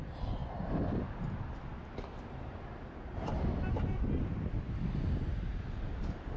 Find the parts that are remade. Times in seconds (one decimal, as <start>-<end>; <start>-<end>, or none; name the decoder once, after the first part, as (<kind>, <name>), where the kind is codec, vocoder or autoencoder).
0.0-0.4 (vocoder, BigVGAN v2); 1.2-1.7; 5.5-6.4